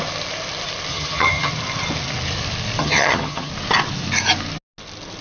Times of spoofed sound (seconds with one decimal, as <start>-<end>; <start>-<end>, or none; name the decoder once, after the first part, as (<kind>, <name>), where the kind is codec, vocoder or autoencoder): 0.9-1.5 (vocoder, HiFi-GAN); 2.8-3.5